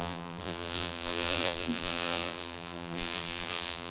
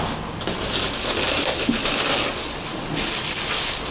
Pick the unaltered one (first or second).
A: second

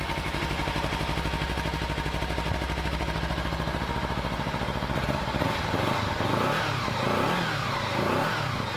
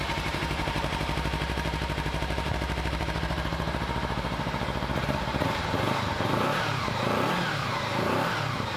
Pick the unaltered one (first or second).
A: first